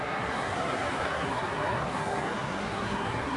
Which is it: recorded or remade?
remade